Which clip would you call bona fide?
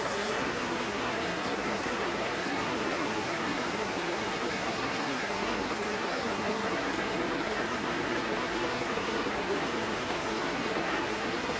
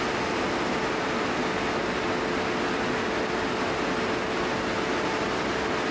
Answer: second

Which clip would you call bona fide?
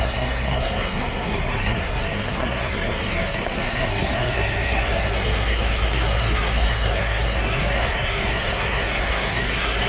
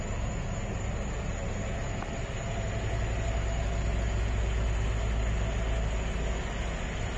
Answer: second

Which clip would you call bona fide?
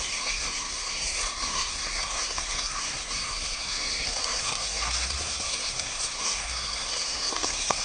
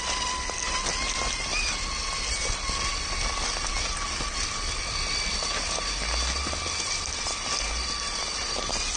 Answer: second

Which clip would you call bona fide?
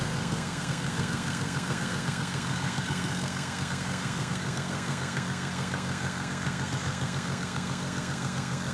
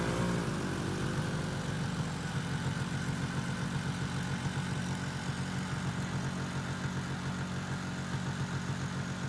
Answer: second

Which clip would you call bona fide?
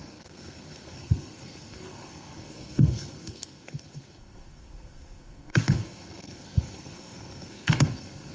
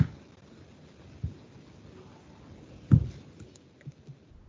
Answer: second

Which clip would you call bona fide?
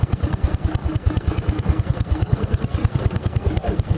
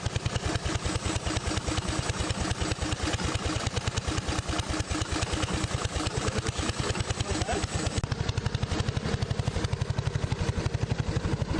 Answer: second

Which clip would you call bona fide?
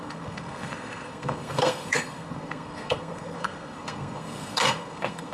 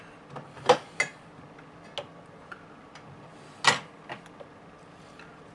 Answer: second